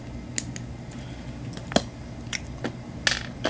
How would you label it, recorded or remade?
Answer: recorded